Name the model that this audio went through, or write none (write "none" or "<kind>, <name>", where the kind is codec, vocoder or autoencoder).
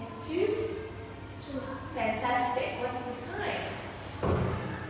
none